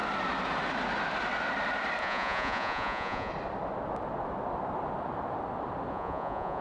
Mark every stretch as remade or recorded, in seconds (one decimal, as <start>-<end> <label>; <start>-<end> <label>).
0.0-2.0 recorded; 2.0-3.3 remade; 3.3-5.9 recorded; 5.9-6.6 remade